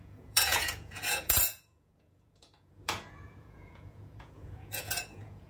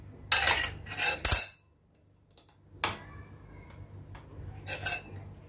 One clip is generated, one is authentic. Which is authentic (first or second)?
second